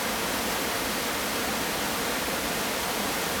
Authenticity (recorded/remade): recorded